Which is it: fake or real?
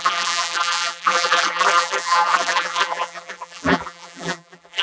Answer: fake